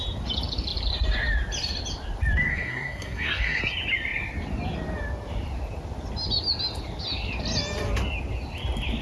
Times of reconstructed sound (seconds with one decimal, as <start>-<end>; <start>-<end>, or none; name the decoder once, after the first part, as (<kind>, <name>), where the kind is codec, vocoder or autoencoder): 2.5-3.6 (codec, SNAC)